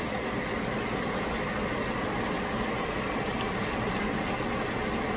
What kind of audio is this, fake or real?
real